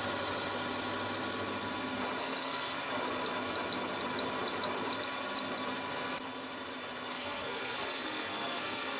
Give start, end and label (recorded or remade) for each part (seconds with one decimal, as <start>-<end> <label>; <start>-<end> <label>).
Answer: 0.0-2.2 recorded; 2.2-2.8 remade; 2.8-7.1 recorded; 7.1-9.0 remade